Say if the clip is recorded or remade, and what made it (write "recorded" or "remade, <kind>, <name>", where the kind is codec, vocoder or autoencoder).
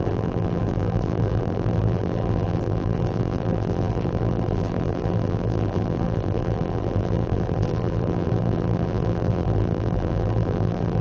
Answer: remade, vocoder, BigVGAN v2